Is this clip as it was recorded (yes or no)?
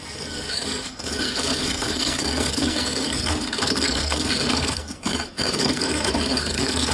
no